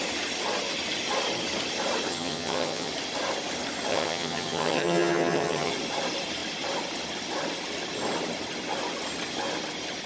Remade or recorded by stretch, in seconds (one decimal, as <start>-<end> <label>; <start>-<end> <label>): 0.0-2.1 recorded; 2.1-2.9 remade; 2.9-3.9 recorded; 3.9-5.7 remade; 5.7-10.1 recorded